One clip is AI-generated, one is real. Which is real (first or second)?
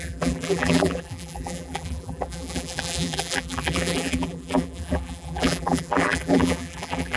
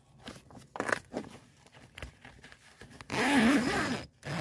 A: second